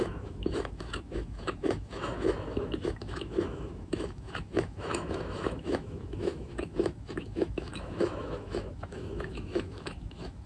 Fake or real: fake